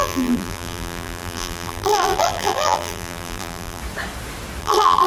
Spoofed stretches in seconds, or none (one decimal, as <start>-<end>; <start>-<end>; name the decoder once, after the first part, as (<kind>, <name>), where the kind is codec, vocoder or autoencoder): 0.0-3.8 (vocoder, BigVGAN v2); 4.6-5.1